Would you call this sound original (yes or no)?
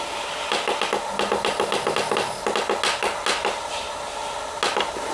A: yes